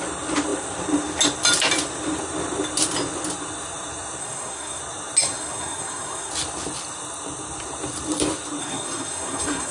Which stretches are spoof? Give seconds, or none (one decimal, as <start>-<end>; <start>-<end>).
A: 4.2-4.8; 5.2-6.3; 8.6-9.7